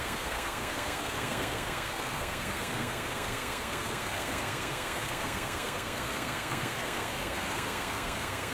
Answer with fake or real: fake